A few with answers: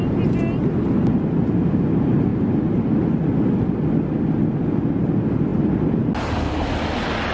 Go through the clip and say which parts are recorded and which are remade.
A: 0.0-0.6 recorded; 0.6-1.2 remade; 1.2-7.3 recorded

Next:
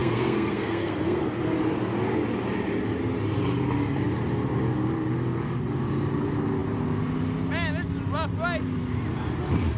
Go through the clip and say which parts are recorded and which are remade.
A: 0.0-1.2 remade; 1.2-9.8 recorded

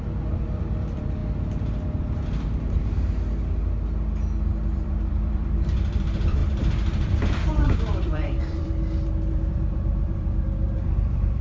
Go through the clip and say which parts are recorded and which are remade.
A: 0.0-1.2 remade; 1.2-4.5 recorded; 4.5-11.4 remade

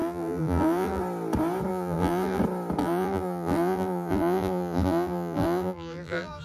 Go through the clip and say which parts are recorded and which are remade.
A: 0.0-1.0 remade; 1.0-1.7 recorded; 1.7-2.4 remade; 2.4-2.8 recorded; 2.8-6.4 remade

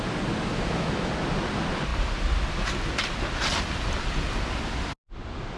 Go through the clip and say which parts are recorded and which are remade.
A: 0.0-0.5 recorded; 0.5-1.1 remade; 1.1-5.6 recorded

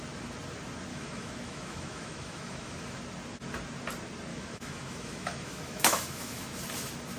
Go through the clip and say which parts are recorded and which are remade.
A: 0.0-0.9 recorded; 0.9-3.0 remade; 3.0-4.3 recorded; 4.3-6.6 remade; 6.6-7.2 recorded